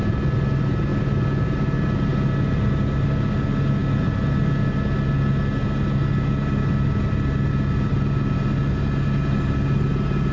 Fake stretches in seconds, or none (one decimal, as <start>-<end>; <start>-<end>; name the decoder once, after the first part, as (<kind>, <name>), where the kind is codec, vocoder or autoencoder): none